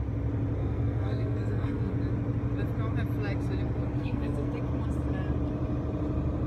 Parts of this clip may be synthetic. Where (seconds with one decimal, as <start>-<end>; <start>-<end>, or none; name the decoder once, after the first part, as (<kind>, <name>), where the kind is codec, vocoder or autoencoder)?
0.6-1.9 (codec, SNAC); 4.0-4.5